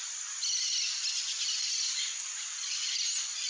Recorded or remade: recorded